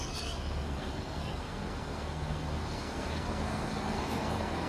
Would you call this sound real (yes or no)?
no